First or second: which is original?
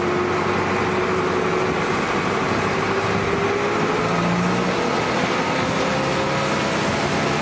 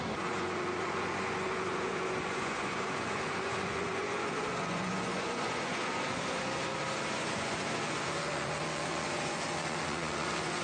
first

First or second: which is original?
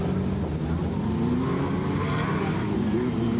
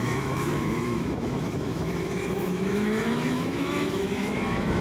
first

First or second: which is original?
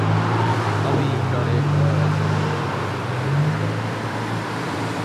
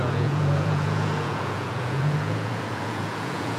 first